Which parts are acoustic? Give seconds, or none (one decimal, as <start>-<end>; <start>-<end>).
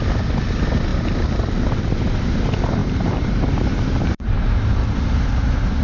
0.0-0.9; 1.7-2.8; 5.2-5.8